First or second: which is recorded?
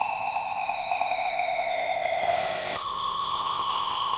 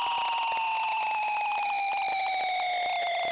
second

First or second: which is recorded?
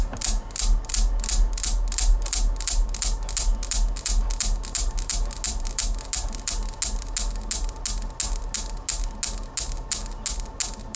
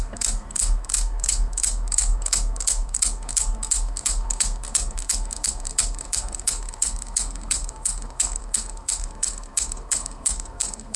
first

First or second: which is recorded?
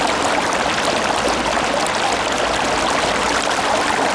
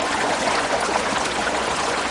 first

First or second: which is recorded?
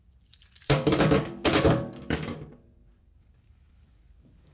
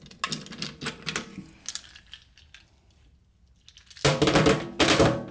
second